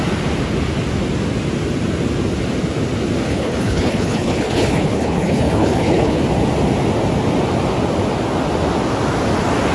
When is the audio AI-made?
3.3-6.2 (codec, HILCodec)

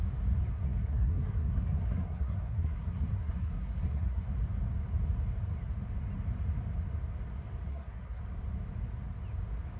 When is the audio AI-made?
0.5-4.3 (codec, SNAC); 7.7-8.2

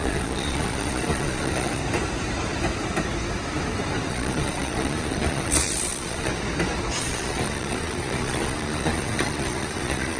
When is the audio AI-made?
0.0-1.8 (vocoder, Vocos); 4.1-6.3; 7.0-10.2

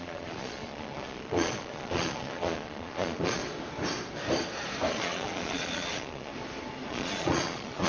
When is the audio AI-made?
0.0-3.4 (vocoder, Vocos); 4.9-6.3; 6.9-7.9

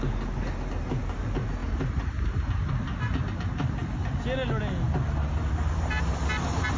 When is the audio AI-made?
none

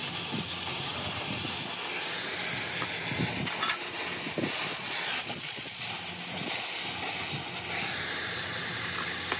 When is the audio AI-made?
4.7-5.8 (vocoder, Vocos)

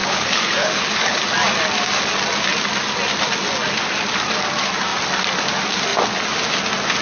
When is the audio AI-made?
0.0-1.2 (codec, HILCodec)

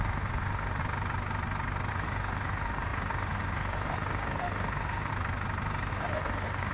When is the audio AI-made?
0.0-0.8 (autoencoder, DAC-VAE); 1.9-5.1; 5.9-6.7